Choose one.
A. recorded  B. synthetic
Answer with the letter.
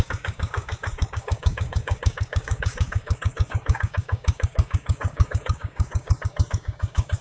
B